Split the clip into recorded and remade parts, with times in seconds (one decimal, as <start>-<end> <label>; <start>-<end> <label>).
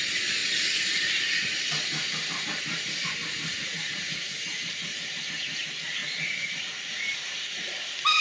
0.0-0.4 recorded; 0.4-5.2 remade; 5.2-6.0 recorded; 6.0-6.6 remade; 6.6-8.2 recorded